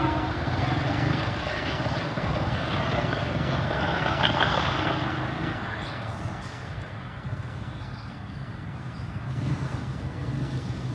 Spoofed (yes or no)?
yes